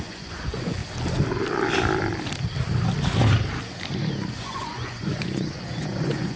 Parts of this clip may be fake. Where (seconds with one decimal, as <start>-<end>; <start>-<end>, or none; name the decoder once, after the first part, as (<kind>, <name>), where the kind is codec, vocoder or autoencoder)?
0.0-0.8 (vocoder, Vocos); 4.3-6.4